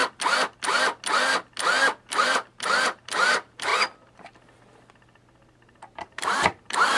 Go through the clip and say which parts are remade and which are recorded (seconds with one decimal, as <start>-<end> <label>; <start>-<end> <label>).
0.0-2.1 recorded; 2.1-3.7 remade; 3.7-6.0 recorded; 6.0-7.0 remade